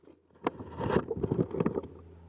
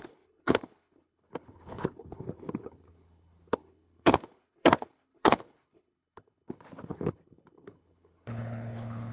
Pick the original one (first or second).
first